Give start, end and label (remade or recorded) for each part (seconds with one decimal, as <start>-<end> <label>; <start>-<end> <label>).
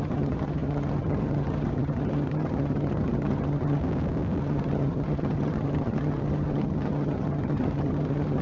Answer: 0.0-3.8 remade; 3.8-4.4 recorded; 4.4-8.4 remade